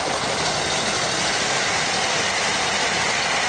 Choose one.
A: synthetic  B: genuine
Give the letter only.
B